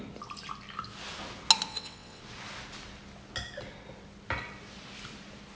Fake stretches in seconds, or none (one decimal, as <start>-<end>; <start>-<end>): 1.7-2.2